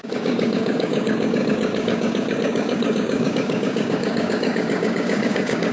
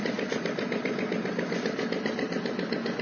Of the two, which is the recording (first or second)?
second